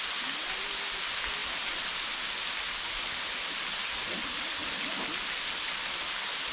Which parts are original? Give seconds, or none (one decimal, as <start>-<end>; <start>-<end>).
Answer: 0.0-6.5